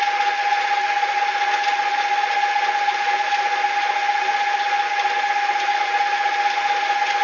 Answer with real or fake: real